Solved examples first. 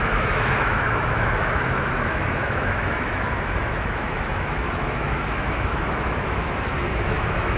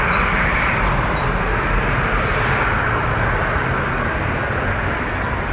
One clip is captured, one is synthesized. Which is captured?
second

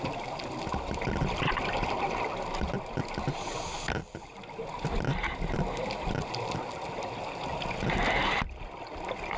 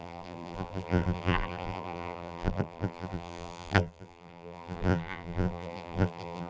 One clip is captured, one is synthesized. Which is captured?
first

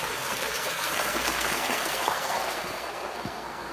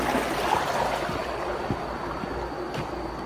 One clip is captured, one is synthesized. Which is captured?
second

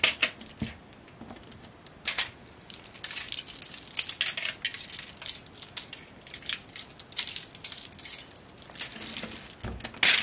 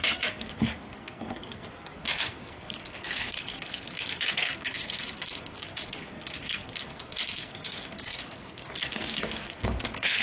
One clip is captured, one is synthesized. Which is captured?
first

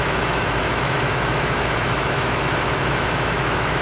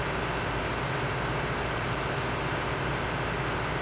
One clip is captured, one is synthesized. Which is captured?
second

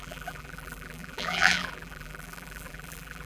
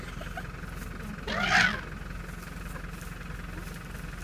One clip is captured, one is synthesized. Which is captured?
second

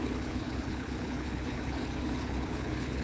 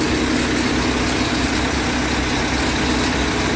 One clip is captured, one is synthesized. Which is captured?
second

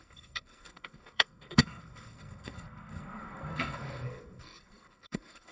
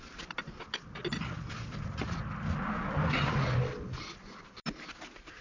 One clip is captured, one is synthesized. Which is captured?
second